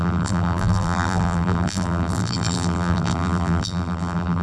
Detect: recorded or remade remade